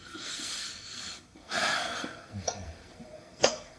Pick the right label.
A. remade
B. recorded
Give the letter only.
A